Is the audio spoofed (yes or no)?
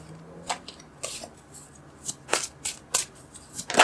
no